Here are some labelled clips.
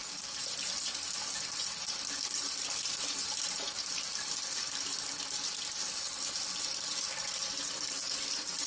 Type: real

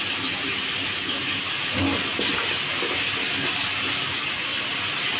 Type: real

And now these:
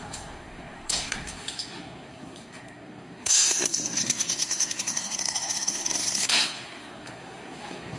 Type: fake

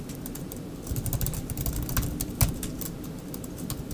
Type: real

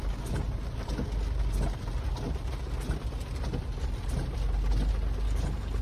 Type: real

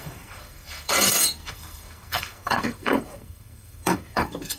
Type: fake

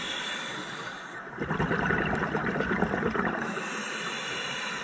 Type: real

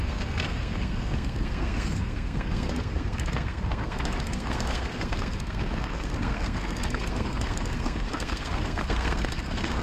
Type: fake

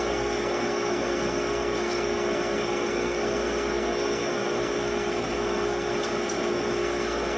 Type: fake